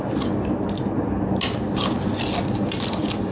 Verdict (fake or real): real